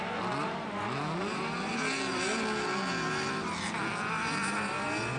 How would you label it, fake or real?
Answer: real